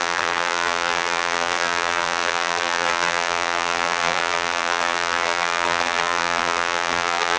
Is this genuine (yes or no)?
no